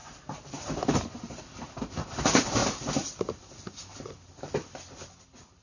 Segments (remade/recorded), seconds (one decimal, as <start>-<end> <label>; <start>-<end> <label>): 0.0-1.4 remade; 1.4-2.6 recorded; 2.6-3.2 remade; 3.2-3.8 recorded; 3.8-4.3 remade; 4.3-5.6 recorded